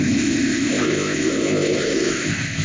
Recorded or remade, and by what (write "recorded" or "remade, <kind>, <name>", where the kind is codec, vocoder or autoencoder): remade, codec, ZipCodec